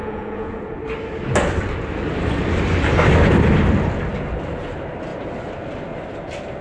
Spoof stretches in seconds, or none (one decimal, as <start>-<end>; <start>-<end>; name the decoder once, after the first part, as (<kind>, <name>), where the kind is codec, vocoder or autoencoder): 0.0-0.8 (vocoder, Vocos)